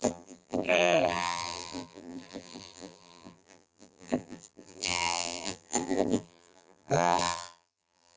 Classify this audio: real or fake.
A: fake